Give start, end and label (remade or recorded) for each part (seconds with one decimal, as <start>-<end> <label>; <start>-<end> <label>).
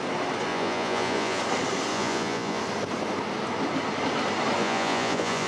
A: 0.0-0.5 recorded; 0.5-1.4 remade; 1.4-1.9 recorded; 1.9-2.6 remade; 2.6-4.6 recorded; 4.6-5.5 remade